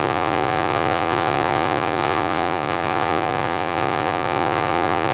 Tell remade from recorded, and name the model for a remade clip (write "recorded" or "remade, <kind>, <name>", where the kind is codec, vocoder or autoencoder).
remade, vocoder, Vocos